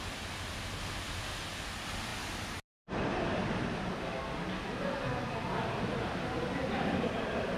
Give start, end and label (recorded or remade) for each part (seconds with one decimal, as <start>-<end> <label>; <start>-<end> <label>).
0.0-7.6 recorded